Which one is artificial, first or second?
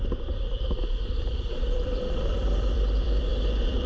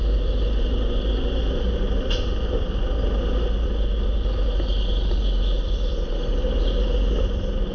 first